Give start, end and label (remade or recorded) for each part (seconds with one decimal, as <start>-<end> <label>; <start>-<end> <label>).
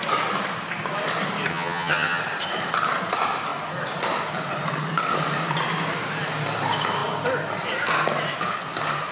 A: 0.0-1.5 recorded; 1.5-2.2 remade; 2.2-9.1 recorded